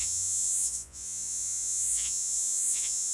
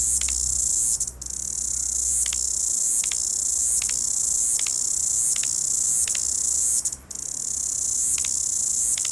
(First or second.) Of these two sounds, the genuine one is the second